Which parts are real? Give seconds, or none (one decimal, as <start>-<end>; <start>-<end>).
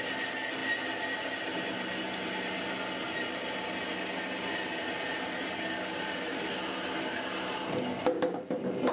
0.0-8.9